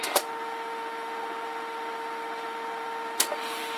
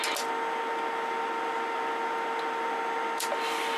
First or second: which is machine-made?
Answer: first